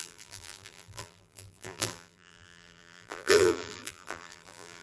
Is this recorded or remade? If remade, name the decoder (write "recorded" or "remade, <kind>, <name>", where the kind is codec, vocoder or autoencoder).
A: remade, vocoder, BigVGAN v2